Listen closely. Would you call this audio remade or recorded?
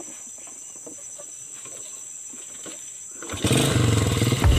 recorded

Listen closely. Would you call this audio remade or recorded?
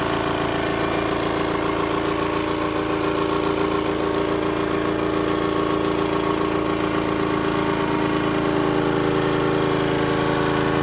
recorded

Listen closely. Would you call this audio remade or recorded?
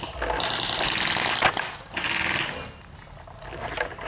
recorded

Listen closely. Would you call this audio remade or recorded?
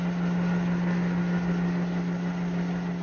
recorded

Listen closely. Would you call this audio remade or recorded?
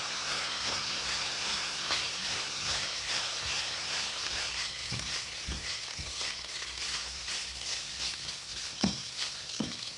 remade